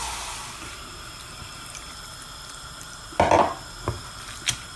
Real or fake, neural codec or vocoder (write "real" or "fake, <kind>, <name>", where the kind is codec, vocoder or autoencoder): real